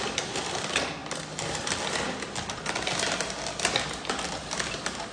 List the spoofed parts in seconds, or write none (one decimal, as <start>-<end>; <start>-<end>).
none